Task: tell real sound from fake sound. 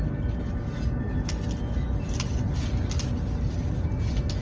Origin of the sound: real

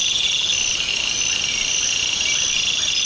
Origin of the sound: real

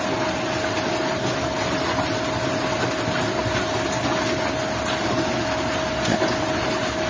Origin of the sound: real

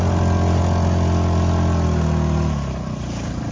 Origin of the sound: real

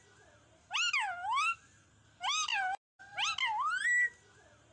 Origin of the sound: real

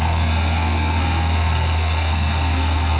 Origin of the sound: fake